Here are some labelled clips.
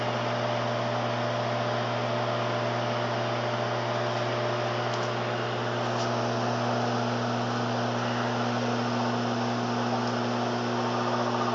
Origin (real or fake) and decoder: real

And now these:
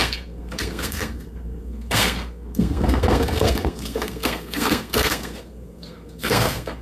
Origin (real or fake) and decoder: fake, codec, SNAC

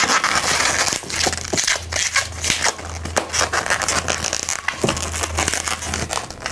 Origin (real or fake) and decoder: real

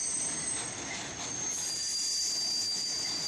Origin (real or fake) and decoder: real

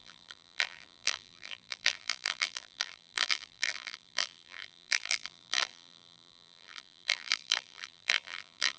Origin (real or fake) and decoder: fake, vocoder, BigVGAN v2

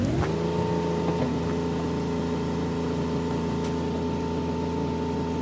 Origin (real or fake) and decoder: real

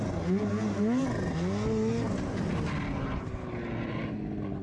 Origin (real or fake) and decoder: real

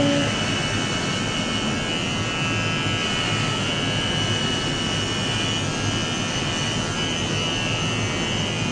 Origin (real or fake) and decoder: real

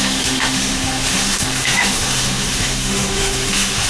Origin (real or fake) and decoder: fake, autoencoder, DAC-VAE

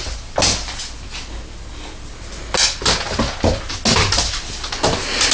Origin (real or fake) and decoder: real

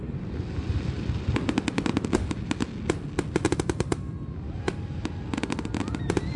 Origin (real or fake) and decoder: real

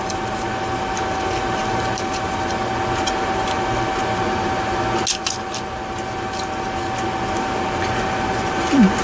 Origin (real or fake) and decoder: real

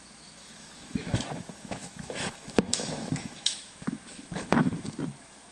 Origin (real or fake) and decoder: fake, autoencoder, DAC-VAE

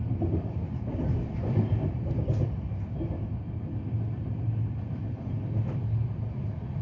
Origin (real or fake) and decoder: real